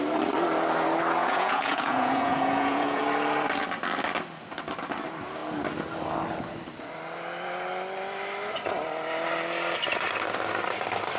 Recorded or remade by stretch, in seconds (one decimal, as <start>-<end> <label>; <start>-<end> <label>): 0.0-1.2 recorded; 1.2-3.0 remade; 3.0-11.2 recorded